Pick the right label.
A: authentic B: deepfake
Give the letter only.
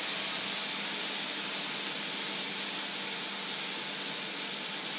A